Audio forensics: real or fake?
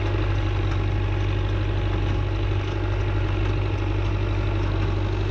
real